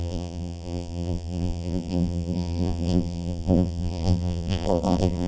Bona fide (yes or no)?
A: no